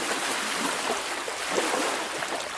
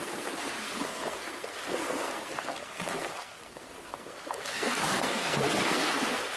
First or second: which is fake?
second